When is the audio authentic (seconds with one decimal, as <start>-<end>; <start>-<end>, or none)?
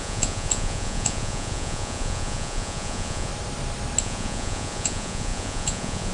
3.3-4.0